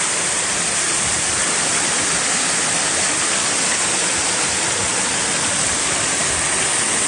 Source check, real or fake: real